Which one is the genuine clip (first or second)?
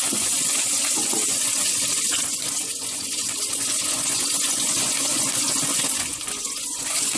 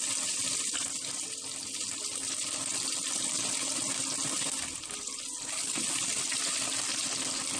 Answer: second